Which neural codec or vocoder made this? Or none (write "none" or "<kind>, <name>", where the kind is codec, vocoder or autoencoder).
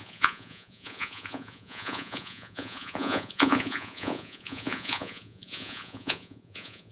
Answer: vocoder, Vocos